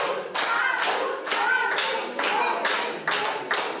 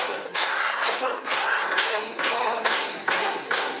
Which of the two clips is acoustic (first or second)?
first